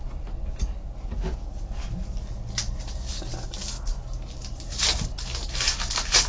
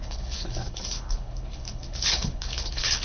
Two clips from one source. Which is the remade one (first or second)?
second